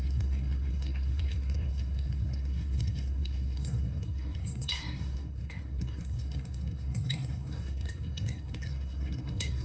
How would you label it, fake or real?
fake